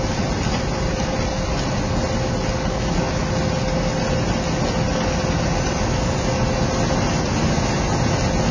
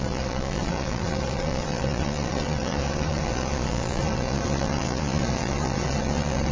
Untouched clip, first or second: first